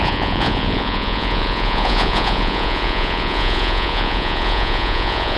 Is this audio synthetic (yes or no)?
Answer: yes